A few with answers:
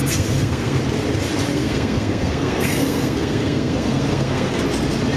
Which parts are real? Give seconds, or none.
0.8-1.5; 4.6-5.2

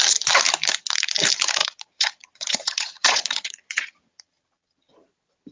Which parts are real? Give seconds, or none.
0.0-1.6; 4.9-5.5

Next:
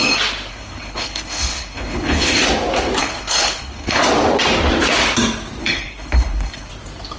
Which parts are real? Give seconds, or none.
0.0-0.5; 2.4-3.0; 4.0-5.6; 6.7-7.2

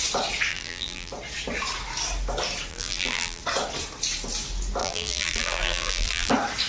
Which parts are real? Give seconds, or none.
0.0-0.5; 1.1-2.7; 3.4-4.8; 6.3-6.7

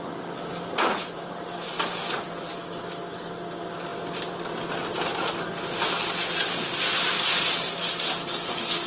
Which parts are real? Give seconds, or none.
0.0-2.6; 3.3-8.9

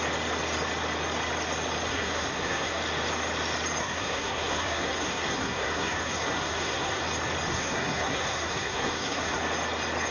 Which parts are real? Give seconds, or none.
0.0-1.9; 2.8-3.8; 7.0-7.5; 9.4-10.1